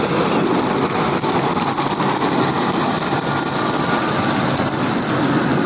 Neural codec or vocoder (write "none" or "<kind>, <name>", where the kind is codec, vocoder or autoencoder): none